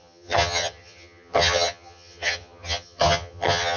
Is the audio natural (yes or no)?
no